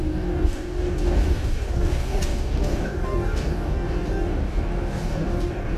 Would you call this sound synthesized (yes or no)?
yes